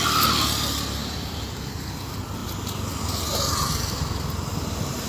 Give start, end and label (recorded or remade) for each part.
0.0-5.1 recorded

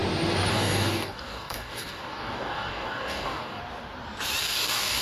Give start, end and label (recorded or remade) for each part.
0.0-0.5 recorded; 0.5-3.6 remade; 3.6-4.4 recorded; 4.4-5.0 remade

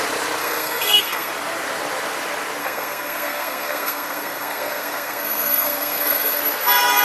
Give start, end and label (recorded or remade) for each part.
0.0-0.4 recorded; 0.4-1.3 remade; 1.3-2.6 recorded; 2.6-6.4 remade; 6.4-7.0 recorded

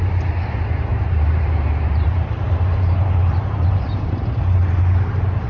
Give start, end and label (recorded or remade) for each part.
0.0-0.9 recorded; 0.9-4.2 remade; 4.2-5.5 recorded

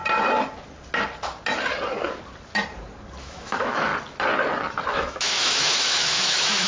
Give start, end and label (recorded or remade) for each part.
0.0-3.2 recorded; 3.2-3.9 remade; 3.9-4.9 recorded; 4.9-6.7 remade

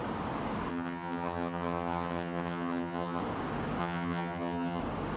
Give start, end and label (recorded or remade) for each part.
0.0-0.7 recorded; 0.7-3.2 remade; 3.2-3.8 recorded; 3.8-4.8 remade; 4.8-5.2 recorded